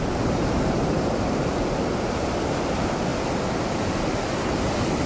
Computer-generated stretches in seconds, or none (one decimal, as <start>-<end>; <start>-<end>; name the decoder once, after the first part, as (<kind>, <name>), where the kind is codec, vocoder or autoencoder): none